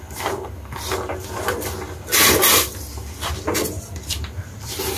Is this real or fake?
real